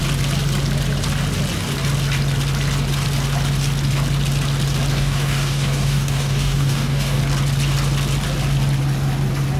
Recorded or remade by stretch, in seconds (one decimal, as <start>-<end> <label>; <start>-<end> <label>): 0.0-4.9 recorded; 4.9-7.2 remade; 7.2-9.6 recorded